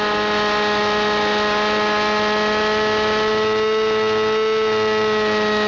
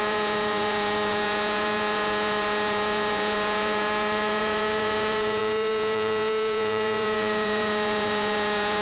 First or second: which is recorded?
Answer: first